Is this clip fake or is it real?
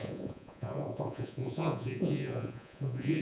fake